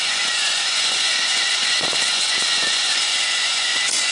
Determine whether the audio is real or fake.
fake